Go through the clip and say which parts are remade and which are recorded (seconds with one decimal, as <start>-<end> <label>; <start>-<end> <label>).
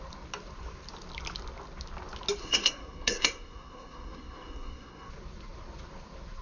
0.0-2.4 recorded; 2.4-5.1 remade; 5.1-6.4 recorded